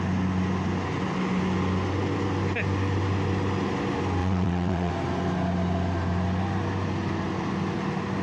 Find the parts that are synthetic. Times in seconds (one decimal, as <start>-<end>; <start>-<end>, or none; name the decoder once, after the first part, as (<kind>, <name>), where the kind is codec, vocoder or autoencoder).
4.2-4.9 (vocoder, WaveNeXt)